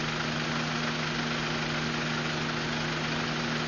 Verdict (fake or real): real